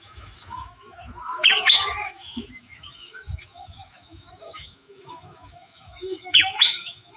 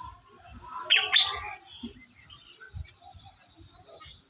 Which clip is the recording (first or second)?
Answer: second